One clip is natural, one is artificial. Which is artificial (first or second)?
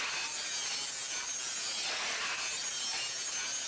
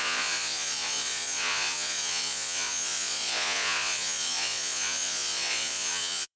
second